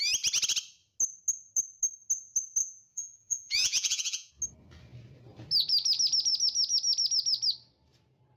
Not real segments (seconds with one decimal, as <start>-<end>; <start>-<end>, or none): 2.6-4.3